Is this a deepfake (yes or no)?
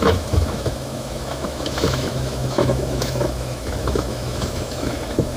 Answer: yes